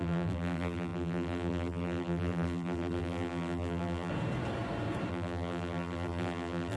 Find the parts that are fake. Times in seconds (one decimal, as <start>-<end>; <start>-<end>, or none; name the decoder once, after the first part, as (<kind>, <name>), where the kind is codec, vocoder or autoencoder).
0.0-4.1 (vocoder, BigVGAN v2); 5.1-6.8